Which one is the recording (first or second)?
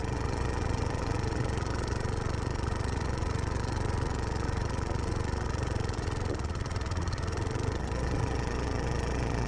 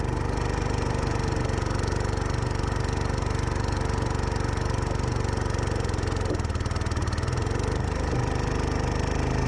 second